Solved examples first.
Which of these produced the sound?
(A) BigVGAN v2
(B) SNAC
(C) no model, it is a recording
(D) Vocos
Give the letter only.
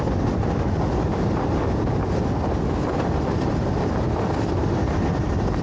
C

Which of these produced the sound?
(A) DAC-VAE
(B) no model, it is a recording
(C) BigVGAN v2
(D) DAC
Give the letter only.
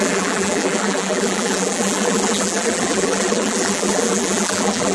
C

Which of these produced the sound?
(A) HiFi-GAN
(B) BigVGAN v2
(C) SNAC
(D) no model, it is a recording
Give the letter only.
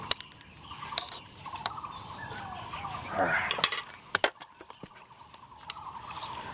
D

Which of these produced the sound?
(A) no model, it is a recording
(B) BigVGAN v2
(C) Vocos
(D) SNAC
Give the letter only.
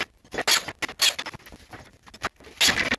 A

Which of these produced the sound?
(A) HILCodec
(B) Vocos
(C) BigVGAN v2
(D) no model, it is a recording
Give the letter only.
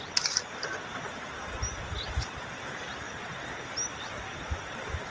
D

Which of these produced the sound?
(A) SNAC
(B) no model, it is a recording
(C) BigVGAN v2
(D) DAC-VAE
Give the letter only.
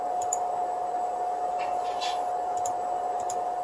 C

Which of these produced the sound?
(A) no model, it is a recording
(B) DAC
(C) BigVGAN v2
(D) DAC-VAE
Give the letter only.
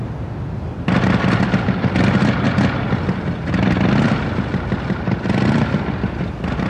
A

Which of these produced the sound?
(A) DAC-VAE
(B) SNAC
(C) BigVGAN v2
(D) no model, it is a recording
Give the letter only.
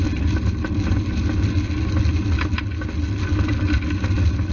D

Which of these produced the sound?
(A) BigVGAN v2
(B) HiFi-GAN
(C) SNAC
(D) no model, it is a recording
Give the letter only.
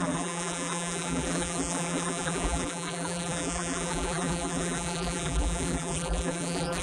A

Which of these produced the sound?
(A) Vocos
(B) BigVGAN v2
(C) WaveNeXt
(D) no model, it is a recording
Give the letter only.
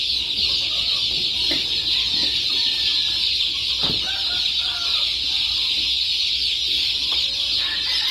D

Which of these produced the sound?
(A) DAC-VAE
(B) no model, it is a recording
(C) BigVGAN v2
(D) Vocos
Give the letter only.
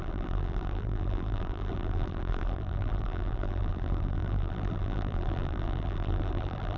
C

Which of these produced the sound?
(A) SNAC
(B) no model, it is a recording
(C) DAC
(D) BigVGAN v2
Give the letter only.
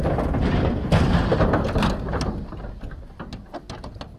B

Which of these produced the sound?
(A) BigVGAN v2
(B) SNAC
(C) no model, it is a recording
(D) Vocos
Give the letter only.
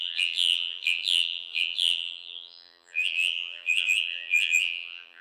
A